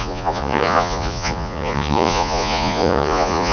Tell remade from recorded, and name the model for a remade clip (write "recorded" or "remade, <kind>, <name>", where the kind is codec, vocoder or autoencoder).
remade, vocoder, Vocos